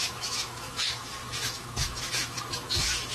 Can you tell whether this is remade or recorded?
remade